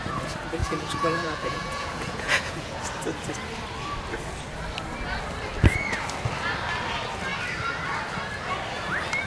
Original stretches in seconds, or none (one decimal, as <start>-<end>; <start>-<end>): 0.0-0.6; 2.8-9.3